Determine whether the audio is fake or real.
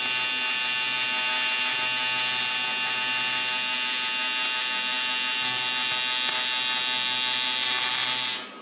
real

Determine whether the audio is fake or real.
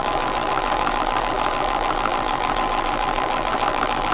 fake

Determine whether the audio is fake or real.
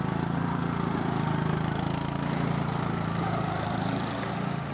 fake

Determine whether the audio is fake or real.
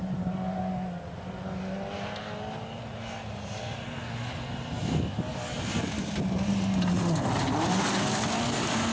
real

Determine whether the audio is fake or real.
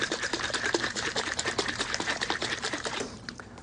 fake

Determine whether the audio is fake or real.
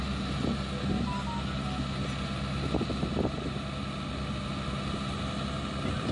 real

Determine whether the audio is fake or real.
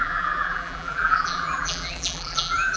fake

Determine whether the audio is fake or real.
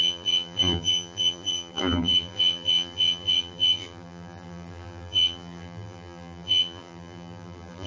fake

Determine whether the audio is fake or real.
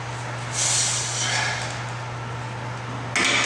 real